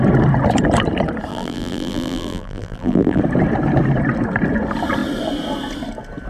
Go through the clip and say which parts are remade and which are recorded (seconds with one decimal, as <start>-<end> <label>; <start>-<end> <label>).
0.0-1.3 recorded; 1.3-3.2 remade; 3.2-6.3 recorded